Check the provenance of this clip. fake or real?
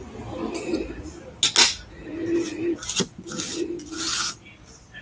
real